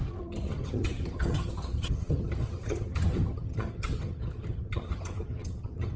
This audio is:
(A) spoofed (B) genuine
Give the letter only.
A